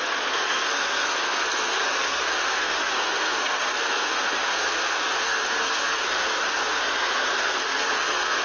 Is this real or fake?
fake